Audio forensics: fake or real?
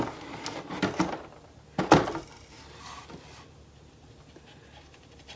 real